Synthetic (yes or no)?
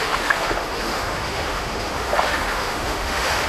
yes